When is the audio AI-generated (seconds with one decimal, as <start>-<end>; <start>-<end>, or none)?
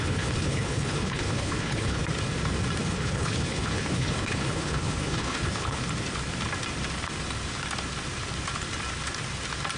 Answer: 0.0-2.0; 2.8-5.8